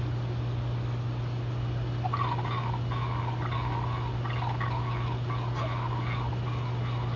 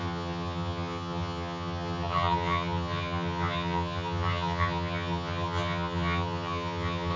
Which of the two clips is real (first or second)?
first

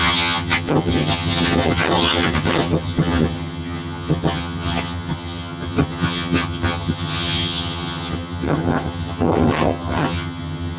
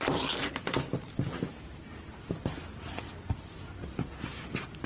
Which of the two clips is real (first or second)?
second